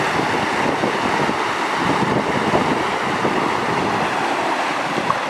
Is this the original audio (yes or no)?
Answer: yes